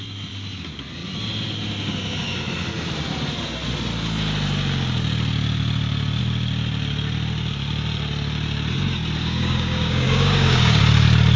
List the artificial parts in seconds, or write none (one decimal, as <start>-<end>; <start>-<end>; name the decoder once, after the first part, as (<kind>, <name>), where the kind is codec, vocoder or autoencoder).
9.2-10.8 (codec, DAC)